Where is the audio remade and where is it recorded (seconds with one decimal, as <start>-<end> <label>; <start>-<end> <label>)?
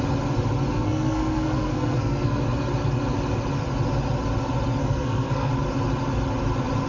0.0-0.7 recorded; 0.7-2.4 remade; 2.4-4.8 recorded; 4.8-5.5 remade; 5.5-6.9 recorded